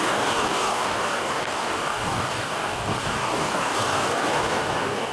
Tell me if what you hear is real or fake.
fake